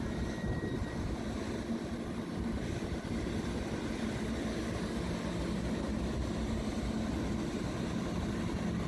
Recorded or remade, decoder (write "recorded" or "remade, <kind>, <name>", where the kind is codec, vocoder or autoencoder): recorded